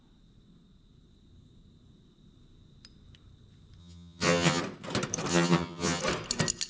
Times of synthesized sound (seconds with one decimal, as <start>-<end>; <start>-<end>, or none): 3.8-4.6; 5.3-6.0